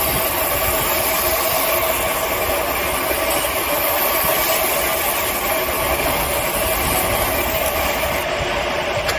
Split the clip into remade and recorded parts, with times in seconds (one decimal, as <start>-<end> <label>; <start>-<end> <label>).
0.0-9.2 recorded